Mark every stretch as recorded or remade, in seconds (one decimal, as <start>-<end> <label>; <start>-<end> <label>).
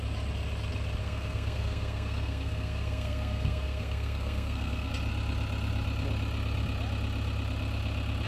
0.0-1.0 recorded; 1.0-4.9 remade; 4.9-8.3 recorded